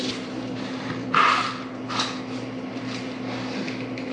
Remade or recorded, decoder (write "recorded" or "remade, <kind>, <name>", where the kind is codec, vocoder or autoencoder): recorded